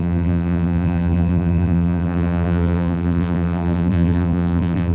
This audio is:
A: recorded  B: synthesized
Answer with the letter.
B